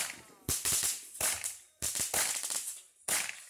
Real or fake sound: real